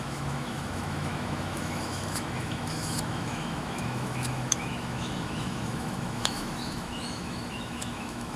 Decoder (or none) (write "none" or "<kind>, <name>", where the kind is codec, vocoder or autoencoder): autoencoder, DAC-VAE